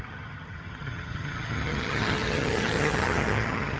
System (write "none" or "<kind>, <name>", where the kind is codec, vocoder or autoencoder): vocoder, HiFi-GAN